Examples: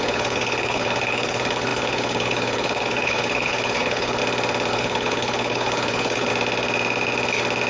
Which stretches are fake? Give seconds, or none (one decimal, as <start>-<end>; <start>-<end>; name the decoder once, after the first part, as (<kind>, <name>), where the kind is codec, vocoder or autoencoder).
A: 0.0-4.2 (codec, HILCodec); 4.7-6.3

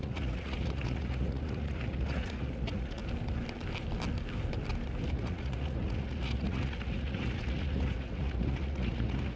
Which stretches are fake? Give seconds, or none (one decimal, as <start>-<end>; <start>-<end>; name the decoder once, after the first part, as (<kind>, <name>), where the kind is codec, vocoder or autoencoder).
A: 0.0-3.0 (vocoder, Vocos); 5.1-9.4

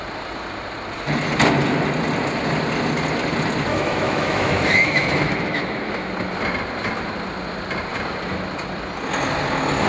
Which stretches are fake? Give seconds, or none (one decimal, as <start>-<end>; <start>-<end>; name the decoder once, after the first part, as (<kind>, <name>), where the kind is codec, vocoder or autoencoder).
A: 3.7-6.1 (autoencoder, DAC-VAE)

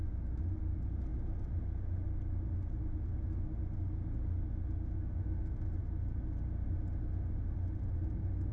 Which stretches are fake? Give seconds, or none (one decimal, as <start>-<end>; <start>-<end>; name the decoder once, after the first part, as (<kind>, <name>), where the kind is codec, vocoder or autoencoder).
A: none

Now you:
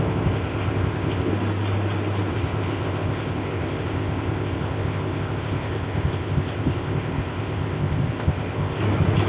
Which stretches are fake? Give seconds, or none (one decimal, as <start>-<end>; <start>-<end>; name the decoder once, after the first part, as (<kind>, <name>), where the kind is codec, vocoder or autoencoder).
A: 0.0-1.3 (codec, ZipCodec); 2.3-8.8

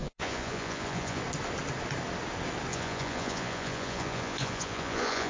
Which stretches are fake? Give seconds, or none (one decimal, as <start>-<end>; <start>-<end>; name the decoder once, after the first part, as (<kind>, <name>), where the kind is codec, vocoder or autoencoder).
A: 0.0-1.2 (vocoder, Vocos); 2.7-5.3